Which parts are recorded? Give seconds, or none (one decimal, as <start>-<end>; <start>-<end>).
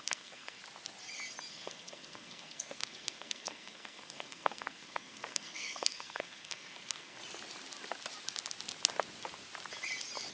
0.6-1.5; 7.2-10.3